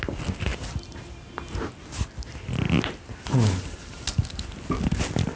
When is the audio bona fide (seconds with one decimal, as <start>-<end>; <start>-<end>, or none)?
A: 0.0-5.4